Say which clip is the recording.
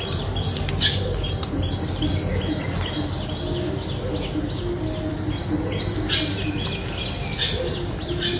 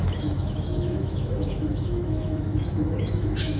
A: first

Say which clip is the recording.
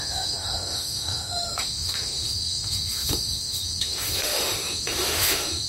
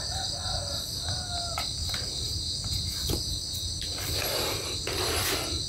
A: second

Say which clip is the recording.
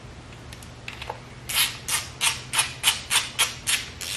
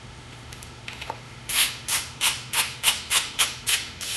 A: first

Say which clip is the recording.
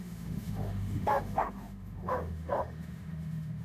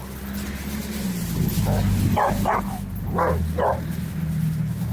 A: second